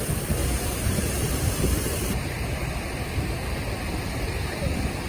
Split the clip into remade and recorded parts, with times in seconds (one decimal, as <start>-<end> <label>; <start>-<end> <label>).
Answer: 0.0-0.4 recorded; 0.4-3.5 remade; 3.5-5.1 recorded